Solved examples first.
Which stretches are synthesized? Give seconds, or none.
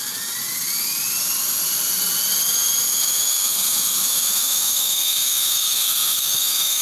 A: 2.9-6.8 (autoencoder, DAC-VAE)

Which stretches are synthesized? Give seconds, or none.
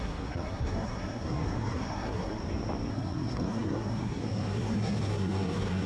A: 0.0-2.4 (codec, SNAC); 2.9-5.9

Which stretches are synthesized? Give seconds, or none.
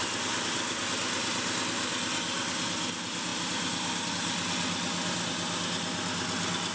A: none